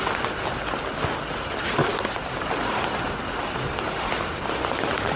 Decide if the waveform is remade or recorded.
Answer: recorded